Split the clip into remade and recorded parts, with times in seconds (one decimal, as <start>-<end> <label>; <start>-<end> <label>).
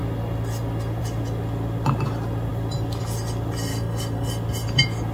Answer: 0.0-3.7 recorded; 3.7-4.3 remade; 4.3-5.1 recorded